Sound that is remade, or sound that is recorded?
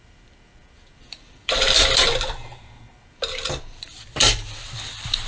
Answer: remade